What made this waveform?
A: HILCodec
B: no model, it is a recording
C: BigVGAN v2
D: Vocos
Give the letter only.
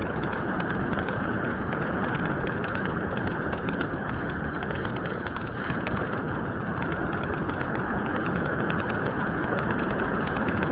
A